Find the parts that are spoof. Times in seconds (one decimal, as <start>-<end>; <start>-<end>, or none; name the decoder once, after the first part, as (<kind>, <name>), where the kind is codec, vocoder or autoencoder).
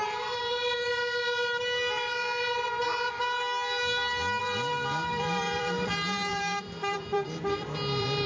0.0-1.0 (vocoder, BigVGAN v2); 2.4-2.8; 4.4-8.3